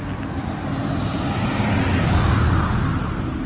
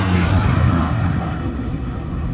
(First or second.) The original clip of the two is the first